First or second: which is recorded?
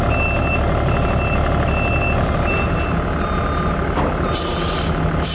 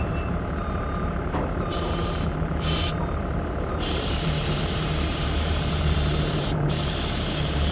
first